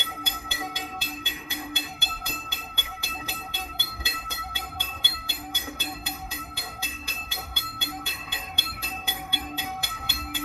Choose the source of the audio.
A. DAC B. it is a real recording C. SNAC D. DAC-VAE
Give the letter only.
D